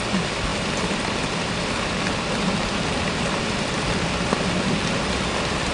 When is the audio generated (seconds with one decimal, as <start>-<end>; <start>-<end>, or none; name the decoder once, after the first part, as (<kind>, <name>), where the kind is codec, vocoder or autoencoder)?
none